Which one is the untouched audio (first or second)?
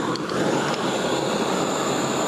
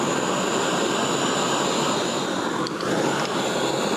second